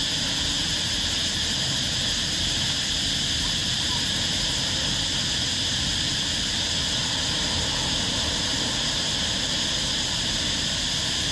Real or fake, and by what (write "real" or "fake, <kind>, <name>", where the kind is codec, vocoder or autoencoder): real